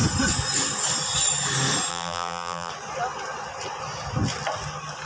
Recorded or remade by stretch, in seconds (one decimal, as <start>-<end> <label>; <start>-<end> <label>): 0.0-1.9 recorded; 1.9-2.7 remade; 2.7-5.1 recorded